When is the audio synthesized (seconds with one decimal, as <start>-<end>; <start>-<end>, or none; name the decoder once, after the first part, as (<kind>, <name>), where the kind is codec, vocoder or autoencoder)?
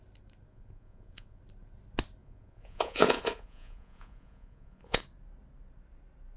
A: 0.5-1.4 (vocoder, Vocos); 2.2-5.0